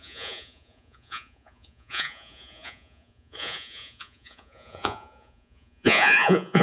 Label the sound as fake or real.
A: fake